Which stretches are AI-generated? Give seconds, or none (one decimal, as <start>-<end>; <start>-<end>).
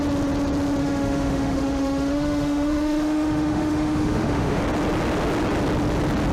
0.8-4.6